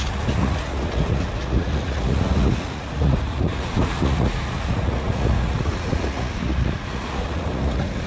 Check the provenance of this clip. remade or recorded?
remade